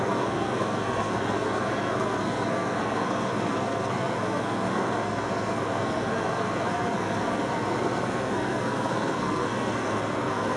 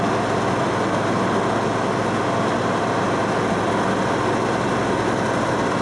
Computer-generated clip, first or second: first